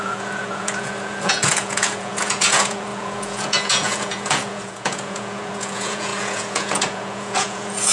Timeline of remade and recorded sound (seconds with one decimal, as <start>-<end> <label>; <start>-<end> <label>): 0.0-7.9 remade